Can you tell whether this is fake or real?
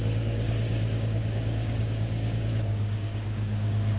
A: fake